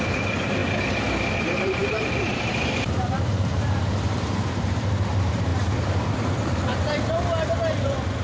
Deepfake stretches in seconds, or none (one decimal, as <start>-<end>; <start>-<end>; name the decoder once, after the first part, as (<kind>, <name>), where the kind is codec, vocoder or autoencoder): 0.0-0.6 (vocoder, BigVGAN v2); 1.3-8.2